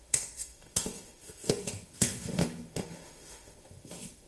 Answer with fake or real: fake